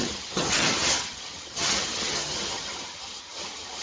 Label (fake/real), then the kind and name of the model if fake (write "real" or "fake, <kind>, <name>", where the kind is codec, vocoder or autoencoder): fake, vocoder, HiFi-GAN